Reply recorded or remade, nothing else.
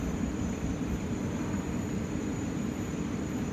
remade